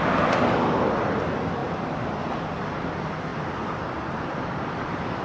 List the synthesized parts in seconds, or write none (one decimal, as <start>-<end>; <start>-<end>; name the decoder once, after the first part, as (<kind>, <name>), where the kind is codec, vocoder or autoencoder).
none

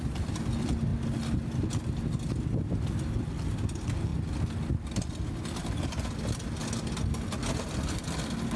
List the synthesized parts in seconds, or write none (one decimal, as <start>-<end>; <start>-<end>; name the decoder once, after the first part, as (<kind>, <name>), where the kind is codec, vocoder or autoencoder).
0.0-0.9 (vocoder, BigVGAN v2); 3.6-4.1; 5.8-6.6